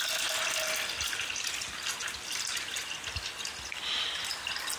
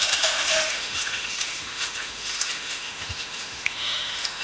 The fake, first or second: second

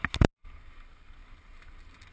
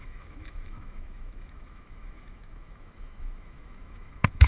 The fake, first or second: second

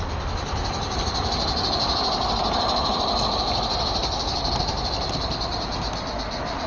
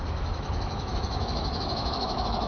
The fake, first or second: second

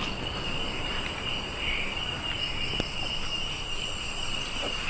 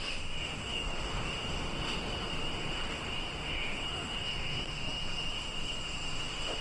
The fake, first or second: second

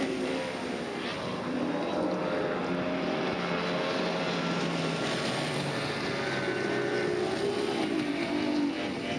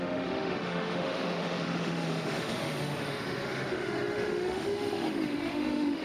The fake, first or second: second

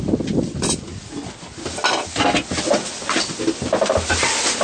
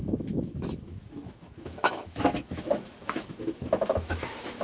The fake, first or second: second